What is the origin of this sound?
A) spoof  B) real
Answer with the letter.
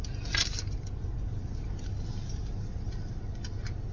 B